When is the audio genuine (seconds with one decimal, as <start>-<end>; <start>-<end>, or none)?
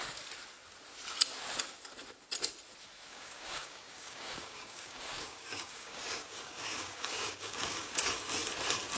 0.0-3.1; 8.0-9.0